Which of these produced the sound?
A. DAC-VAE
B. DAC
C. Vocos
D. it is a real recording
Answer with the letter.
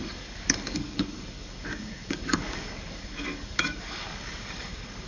B